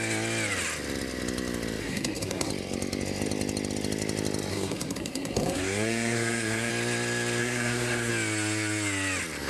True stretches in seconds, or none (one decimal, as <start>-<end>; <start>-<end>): 0.0-1.8; 2.5-4.5; 6.7-7.4; 8.1-9.5